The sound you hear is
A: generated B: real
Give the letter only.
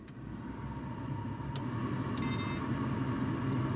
B